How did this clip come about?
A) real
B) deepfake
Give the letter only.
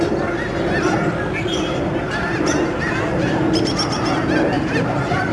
A